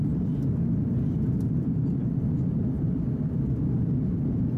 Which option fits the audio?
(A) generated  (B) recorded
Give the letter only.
A